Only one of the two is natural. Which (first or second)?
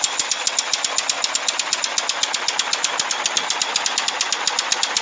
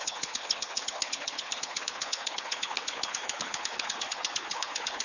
first